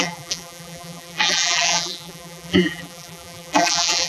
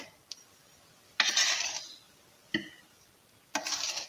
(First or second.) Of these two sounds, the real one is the second